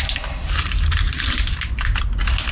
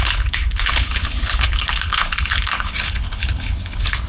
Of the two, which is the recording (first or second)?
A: first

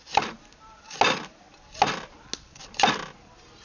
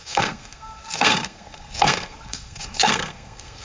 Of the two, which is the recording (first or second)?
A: first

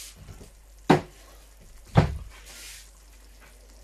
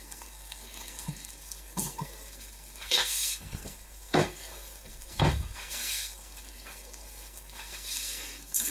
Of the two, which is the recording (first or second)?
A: first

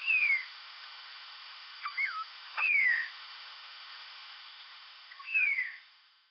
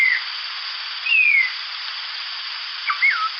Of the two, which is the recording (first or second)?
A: second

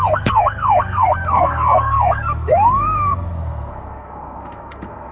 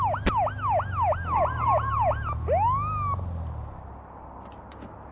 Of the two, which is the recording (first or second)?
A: second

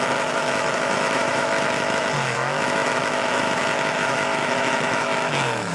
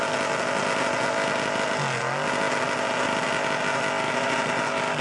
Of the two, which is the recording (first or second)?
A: second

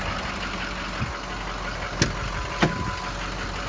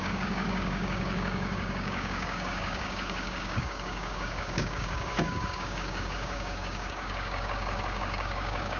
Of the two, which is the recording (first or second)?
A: first